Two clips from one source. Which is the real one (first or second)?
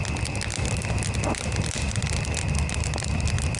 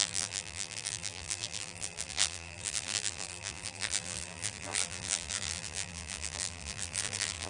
first